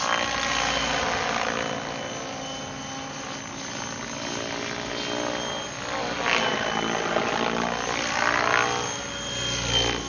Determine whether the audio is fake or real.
real